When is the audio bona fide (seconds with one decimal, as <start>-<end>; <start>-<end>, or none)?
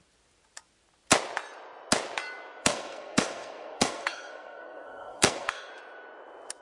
0.0-2.6; 5.7-6.6